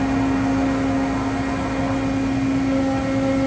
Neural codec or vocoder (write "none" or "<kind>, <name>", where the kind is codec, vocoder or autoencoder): none